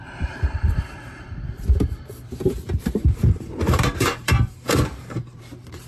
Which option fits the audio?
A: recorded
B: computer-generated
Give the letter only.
B